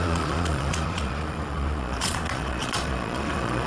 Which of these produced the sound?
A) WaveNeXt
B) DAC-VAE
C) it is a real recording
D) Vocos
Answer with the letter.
D